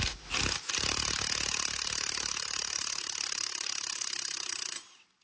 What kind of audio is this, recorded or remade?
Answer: recorded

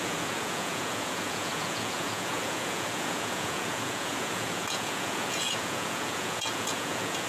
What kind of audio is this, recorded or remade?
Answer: remade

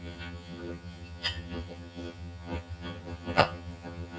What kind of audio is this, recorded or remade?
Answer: remade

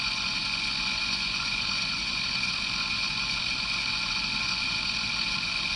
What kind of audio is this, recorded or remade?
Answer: remade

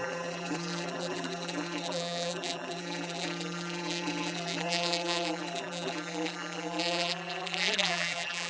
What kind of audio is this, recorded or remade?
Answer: remade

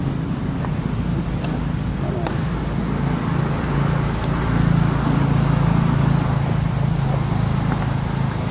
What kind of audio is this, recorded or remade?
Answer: recorded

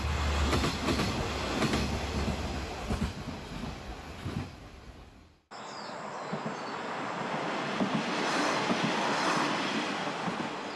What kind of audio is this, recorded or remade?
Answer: recorded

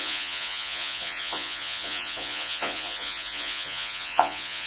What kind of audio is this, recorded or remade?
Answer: remade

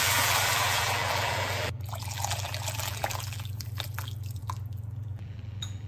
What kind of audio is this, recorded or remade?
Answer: remade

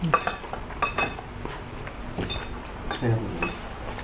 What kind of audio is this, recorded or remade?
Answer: recorded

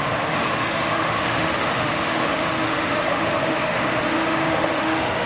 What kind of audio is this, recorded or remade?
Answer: remade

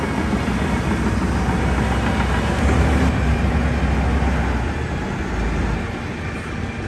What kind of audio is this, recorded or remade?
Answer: recorded